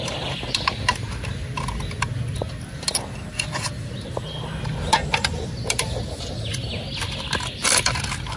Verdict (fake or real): real